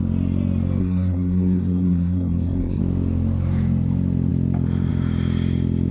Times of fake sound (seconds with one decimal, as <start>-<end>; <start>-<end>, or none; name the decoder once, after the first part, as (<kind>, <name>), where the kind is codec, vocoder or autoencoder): 0.8-2.8 (codec, SNAC)